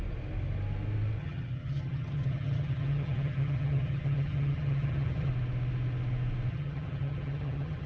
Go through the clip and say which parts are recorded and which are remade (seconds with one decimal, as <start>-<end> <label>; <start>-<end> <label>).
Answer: 0.0-1.2 recorded; 1.2-5.3 remade; 5.3-6.5 recorded; 6.5-7.9 remade